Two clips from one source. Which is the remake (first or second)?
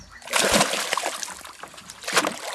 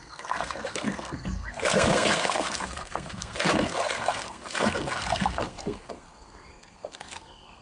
second